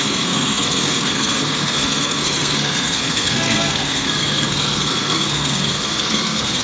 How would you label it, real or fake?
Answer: fake